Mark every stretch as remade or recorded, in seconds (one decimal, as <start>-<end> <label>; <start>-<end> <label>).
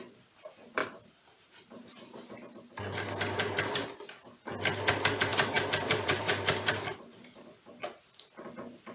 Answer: 0.0-0.8 recorded; 0.8-2.8 remade; 2.8-5.3 recorded; 5.3-8.1 remade; 8.1-8.9 recorded